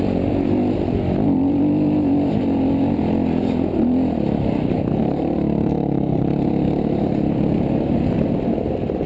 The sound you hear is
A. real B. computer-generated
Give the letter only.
B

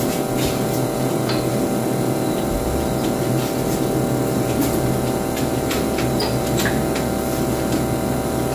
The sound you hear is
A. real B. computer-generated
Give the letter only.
A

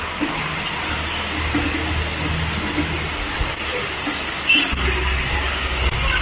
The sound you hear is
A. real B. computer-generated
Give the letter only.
A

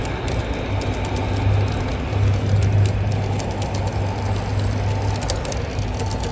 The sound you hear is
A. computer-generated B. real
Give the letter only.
B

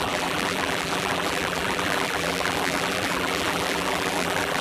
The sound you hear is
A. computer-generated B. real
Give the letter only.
A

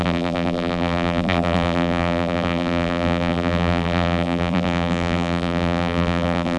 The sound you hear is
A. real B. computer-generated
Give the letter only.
B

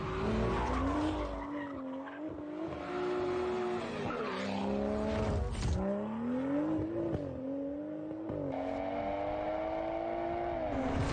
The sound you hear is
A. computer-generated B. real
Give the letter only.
B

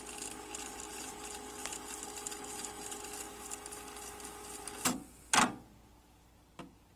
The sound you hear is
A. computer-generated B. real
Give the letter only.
B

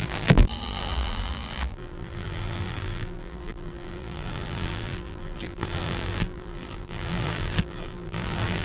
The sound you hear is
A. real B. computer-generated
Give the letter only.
B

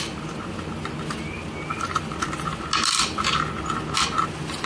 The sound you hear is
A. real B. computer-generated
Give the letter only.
A